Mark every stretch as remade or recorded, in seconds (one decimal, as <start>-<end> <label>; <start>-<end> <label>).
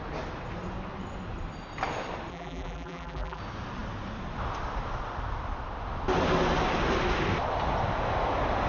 0.0-2.3 recorded; 2.3-3.4 remade; 3.4-8.7 recorded